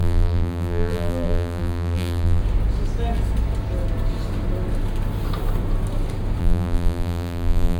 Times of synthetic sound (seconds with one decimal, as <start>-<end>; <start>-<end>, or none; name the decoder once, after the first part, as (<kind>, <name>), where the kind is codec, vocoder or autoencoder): 0.0-2.4 (vocoder, BigVGAN v2); 6.4-7.8